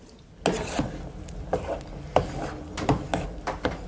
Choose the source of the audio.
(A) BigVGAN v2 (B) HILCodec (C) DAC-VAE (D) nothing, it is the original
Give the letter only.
D